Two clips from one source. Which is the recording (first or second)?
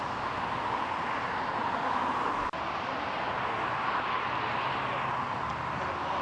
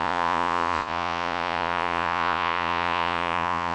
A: first